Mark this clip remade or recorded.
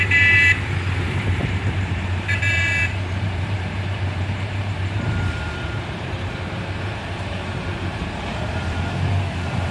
remade